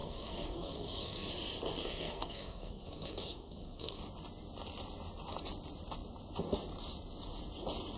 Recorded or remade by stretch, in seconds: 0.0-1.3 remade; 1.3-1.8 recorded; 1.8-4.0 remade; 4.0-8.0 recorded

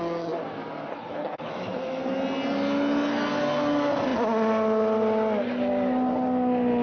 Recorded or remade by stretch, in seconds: 0.0-0.9 recorded; 0.9-1.5 remade; 1.5-6.8 recorded

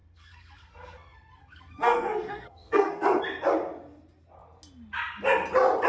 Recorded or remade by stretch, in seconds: 0.0-3.2 remade; 3.2-5.9 recorded

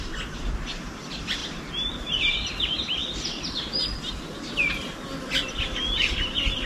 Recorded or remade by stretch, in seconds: 0.0-6.7 recorded

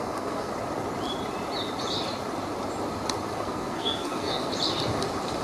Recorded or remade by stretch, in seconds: 0.0-0.5 remade; 0.5-3.3 recorded; 3.3-4.5 remade; 4.5-5.4 recorded